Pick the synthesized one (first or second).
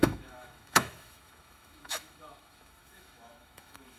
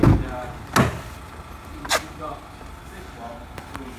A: first